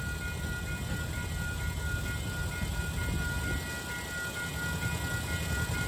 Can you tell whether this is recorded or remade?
recorded